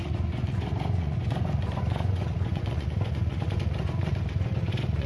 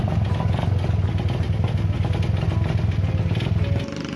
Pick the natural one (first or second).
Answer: second